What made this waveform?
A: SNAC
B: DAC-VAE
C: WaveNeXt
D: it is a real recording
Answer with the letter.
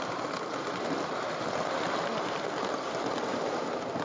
D